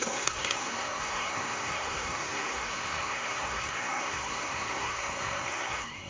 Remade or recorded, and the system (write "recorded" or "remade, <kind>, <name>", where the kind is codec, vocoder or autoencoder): remade, codec, SNAC